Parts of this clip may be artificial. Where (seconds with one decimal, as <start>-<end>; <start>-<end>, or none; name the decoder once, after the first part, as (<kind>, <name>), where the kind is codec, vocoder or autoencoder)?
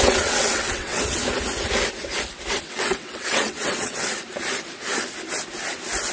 0.0-1.2 (vocoder, WaveNeXt); 2.5-4.1